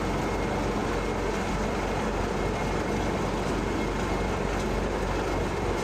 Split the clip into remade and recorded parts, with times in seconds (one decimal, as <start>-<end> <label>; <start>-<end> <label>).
0.0-5.8 recorded